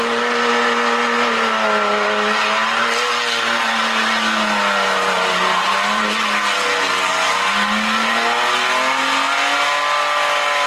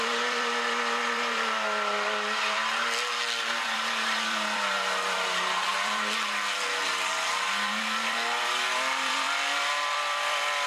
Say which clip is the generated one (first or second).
second